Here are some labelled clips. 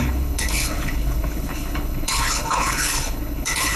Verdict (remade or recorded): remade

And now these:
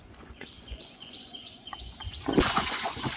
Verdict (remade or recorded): remade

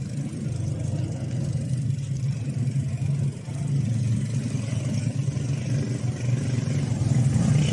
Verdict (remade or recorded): recorded